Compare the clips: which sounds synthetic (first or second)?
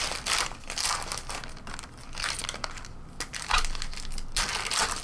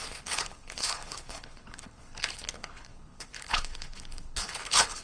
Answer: second